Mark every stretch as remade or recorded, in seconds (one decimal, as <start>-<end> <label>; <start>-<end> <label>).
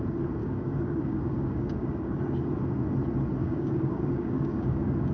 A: 0.0-0.4 recorded; 0.4-2.2 remade; 2.2-3.4 recorded; 3.4-5.1 remade